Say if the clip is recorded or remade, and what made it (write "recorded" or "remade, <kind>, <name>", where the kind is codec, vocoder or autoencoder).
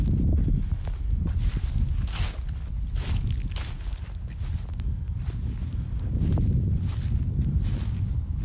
recorded